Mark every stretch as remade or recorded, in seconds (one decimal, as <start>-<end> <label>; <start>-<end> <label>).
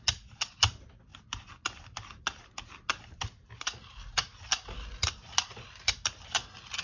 0.0-6.8 recorded